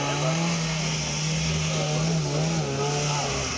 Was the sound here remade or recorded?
recorded